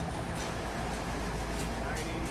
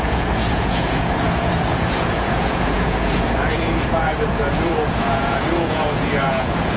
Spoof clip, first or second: second